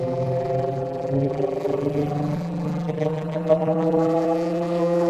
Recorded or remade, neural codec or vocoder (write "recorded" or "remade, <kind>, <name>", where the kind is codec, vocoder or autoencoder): remade, vocoder, BigVGAN v2